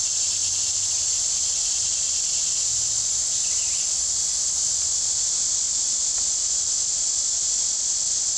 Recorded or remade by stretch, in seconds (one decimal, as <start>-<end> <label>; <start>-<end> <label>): 0.0-8.4 recorded